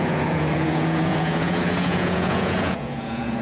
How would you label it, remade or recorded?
remade